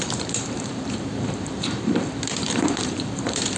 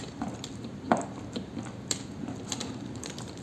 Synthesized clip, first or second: first